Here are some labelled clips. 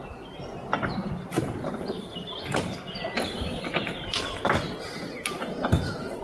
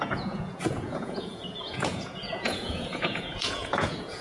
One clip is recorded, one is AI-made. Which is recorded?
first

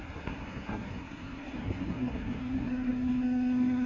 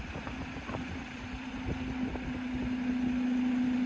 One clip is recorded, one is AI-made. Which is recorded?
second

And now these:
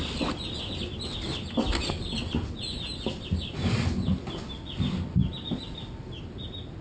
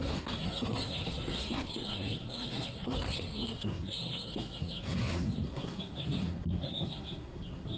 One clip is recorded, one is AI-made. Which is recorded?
first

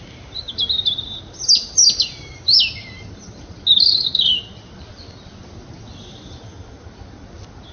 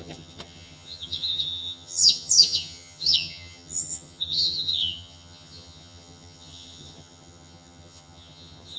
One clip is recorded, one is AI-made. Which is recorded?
first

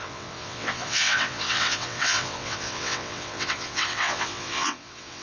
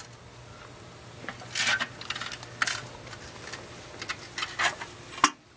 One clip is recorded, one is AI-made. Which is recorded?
second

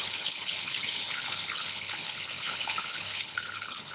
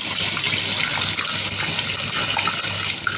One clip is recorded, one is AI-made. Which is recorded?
second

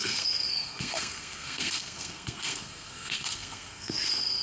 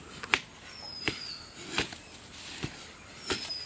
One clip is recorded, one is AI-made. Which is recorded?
second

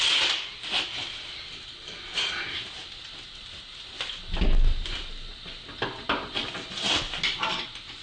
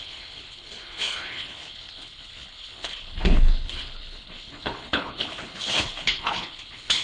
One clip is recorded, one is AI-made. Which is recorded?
first